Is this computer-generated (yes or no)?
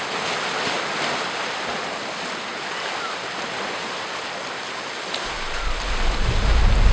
no